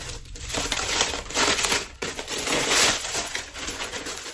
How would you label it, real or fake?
fake